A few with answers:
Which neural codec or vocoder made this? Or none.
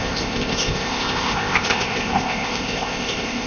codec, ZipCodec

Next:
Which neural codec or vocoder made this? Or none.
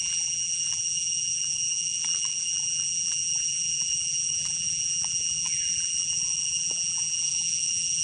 vocoder, BigVGAN v2